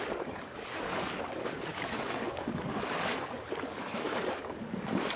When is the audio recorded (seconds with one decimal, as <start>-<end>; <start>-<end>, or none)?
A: none